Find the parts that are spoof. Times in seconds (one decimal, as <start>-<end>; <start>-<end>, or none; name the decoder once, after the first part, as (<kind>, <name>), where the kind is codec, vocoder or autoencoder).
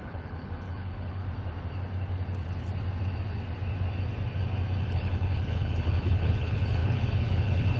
0.0-1.2 (codec, HILCodec); 4.9-7.8